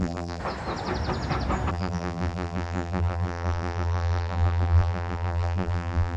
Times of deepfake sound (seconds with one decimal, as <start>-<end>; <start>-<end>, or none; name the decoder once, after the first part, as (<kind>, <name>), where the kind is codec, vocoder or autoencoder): 0.0-0.4 (vocoder, BigVGAN v2); 1.7-6.2